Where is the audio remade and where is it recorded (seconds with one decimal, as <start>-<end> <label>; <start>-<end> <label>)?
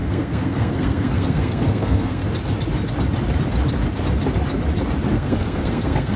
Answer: 0.0-2.2 remade; 2.2-5.1 recorded; 5.1-6.2 remade